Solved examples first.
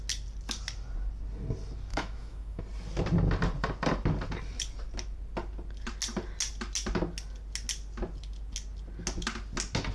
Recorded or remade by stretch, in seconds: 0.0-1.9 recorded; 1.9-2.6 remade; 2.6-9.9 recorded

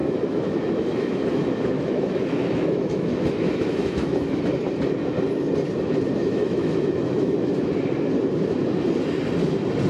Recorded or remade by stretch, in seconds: 0.0-4.4 remade; 4.4-6.2 recorded; 6.2-7.7 remade; 7.7-9.9 recorded

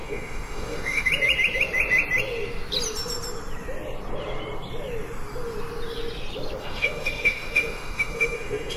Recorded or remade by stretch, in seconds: 0.0-1.1 remade; 1.1-6.6 recorded; 6.6-8.8 remade

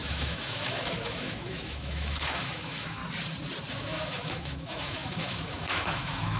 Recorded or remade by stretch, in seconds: 0.0-3.0 remade; 3.0-3.7 recorded; 3.7-6.4 remade

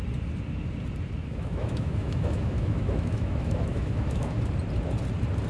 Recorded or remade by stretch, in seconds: 0.0-1.2 recorded; 1.2-4.5 remade; 4.5-5.5 recorded